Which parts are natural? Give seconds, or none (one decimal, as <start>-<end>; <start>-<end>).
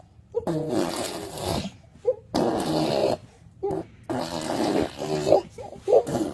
0.0-3.0; 3.7-6.3